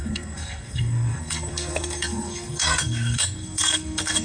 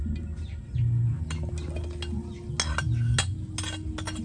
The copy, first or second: first